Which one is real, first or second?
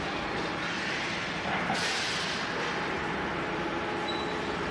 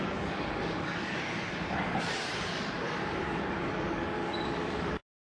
first